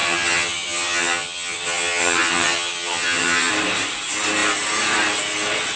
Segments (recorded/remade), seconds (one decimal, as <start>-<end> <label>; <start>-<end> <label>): 0.0-3.5 remade; 3.5-5.8 recorded